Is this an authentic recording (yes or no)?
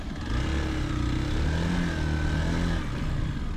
yes